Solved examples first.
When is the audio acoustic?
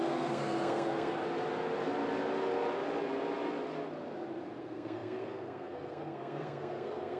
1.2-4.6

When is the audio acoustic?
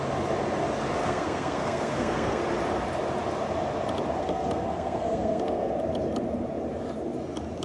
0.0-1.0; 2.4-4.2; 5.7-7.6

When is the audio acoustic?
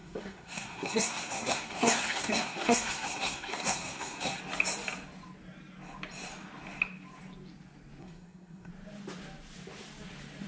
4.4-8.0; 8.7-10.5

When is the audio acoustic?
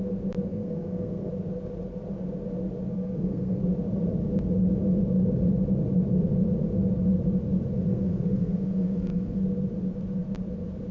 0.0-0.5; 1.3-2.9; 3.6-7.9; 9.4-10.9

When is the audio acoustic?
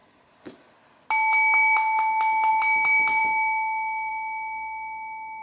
0.0-5.4